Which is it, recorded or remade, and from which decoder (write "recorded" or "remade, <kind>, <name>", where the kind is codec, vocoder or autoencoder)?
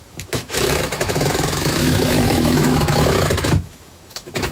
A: remade, autoencoder, DAC-VAE